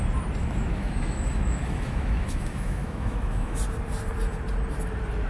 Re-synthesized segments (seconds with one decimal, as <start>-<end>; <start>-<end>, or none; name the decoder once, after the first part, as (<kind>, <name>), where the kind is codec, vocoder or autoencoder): 0.4-3.6 (autoencoder, DAC-VAE)